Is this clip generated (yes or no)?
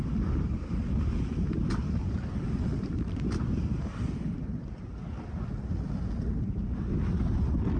no